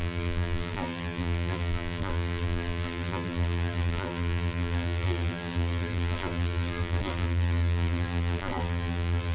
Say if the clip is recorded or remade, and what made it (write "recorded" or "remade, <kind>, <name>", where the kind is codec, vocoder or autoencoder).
remade, vocoder, BigVGAN v2